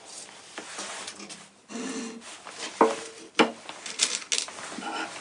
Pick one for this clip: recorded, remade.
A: recorded